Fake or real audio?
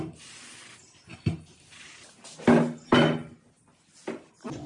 real